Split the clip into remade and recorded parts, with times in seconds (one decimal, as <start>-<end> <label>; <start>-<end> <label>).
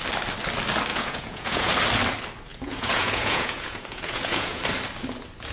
0.0-0.9 recorded; 0.9-1.7 remade; 1.7-2.5 recorded; 2.5-4.6 remade; 4.6-5.5 recorded